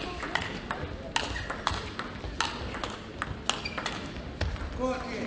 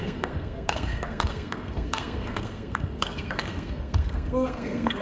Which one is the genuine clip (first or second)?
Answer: first